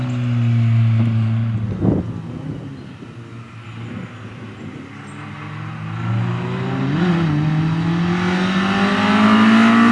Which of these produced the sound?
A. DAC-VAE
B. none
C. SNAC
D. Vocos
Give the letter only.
B